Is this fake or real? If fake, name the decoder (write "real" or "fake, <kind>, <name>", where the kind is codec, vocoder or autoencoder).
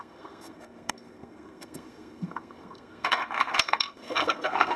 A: fake, codec, SNAC